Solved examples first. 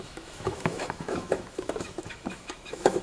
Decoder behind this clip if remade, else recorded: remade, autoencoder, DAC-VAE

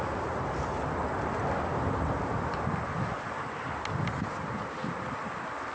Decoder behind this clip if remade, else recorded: recorded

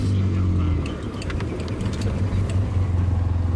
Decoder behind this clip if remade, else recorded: recorded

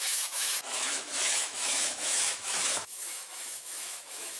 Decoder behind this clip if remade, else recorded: remade, autoencoder, DAC-VAE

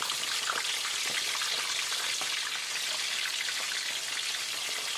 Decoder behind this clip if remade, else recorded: recorded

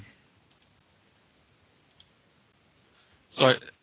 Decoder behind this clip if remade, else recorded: recorded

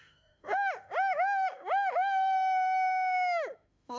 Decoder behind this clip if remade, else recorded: remade, autoencoder, DAC-VAE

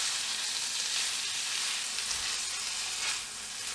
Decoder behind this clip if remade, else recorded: recorded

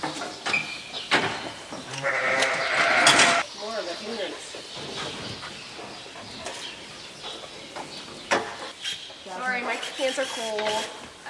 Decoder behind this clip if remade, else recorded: recorded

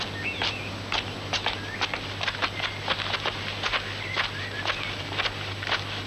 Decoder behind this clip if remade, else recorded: recorded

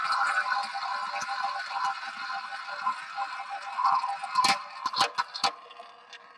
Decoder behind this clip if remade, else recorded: recorded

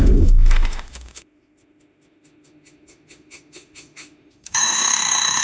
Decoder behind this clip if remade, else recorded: remade, autoencoder, DAC-VAE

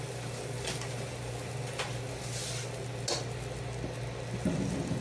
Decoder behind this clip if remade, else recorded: recorded